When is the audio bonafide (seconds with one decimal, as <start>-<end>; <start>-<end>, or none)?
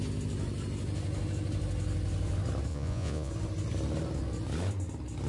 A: 0.0-2.7; 3.3-5.3